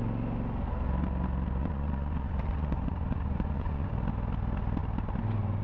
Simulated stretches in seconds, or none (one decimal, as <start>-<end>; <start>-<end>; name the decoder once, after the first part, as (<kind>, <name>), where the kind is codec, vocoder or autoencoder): 1.6-3.9 (vocoder, Vocos)